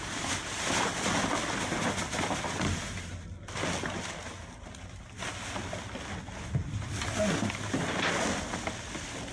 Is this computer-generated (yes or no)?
no